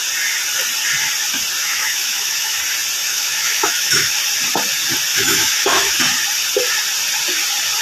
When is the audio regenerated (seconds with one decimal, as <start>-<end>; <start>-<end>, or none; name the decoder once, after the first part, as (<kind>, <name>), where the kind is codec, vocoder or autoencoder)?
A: 1.6-2.6 (autoencoder, DAC-VAE); 3.0-4.2; 5.1-6.0